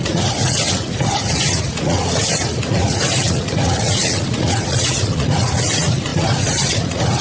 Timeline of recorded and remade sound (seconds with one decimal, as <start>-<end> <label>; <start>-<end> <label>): 0.0-7.2 remade